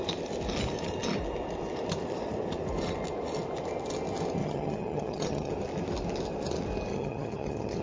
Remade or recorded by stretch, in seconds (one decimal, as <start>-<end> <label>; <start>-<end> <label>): 0.0-4.4 recorded; 4.4-5.5 remade; 5.5-6.9 recorded; 6.9-7.8 remade